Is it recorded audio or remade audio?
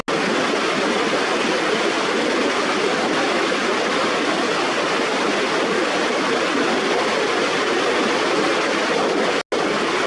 recorded